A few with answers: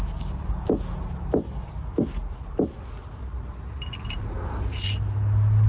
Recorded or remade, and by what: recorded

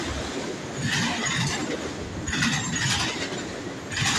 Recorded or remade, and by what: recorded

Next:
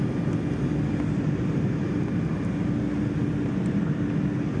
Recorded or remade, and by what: recorded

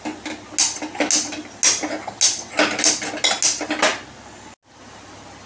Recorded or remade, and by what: recorded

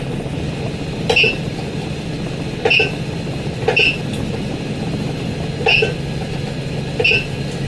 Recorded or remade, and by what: recorded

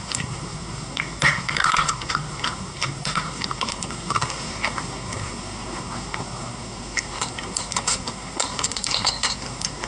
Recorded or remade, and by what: remade, codec, SNAC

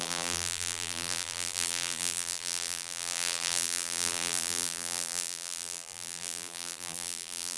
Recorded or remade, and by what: remade, vocoder, BigVGAN v2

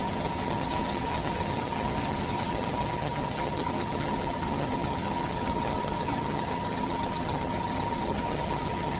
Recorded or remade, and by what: remade, vocoder, HiFi-GAN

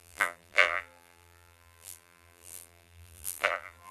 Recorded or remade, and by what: remade, vocoder, BigVGAN v2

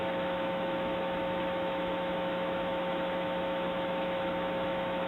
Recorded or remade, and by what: remade, autoencoder, DAC-VAE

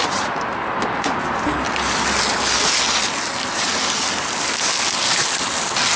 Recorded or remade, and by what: recorded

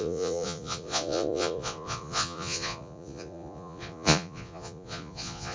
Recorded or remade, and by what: remade, vocoder, Vocos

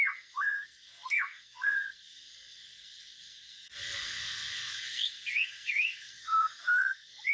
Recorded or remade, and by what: remade, codec, SNAC